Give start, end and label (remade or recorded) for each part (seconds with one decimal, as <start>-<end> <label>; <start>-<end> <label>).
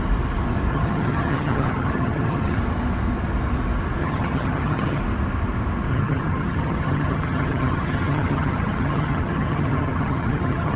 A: 0.0-0.7 recorded; 0.7-2.6 remade; 2.6-4.0 recorded; 4.0-5.0 remade; 5.0-5.9 recorded; 5.9-10.8 remade